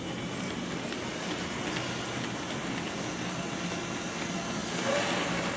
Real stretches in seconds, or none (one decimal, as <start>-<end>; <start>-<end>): 0.0-1.1; 1.6-5.6